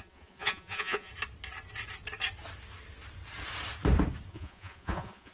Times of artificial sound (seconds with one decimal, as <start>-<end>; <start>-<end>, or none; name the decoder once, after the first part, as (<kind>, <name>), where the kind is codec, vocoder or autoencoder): 0.0-1.1 (vocoder, Vocos); 4.3-5.3